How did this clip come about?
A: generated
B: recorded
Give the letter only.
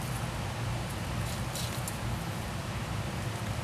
B